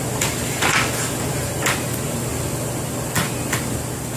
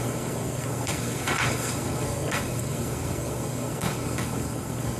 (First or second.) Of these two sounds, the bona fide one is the first